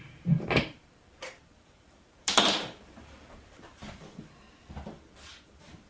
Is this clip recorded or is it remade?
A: remade